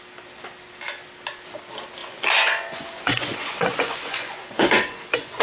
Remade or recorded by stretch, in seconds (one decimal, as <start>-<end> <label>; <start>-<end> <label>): 0.0-2.0 recorded; 2.0-5.4 remade